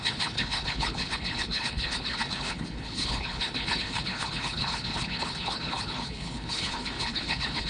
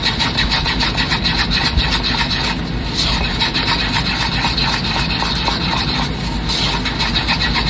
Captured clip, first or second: second